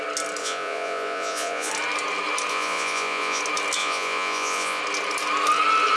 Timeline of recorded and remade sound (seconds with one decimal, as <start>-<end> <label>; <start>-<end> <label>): 0.0-0.4 recorded; 0.4-1.7 remade; 1.7-2.5 recorded; 2.5-3.4 remade; 3.4-3.8 recorded; 3.8-4.8 remade; 4.8-6.0 recorded